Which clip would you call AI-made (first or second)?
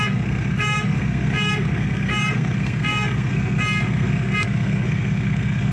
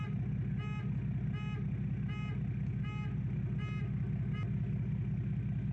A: first